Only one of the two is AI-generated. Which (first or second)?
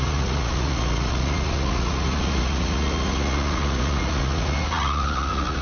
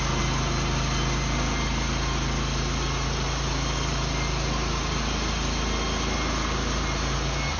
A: first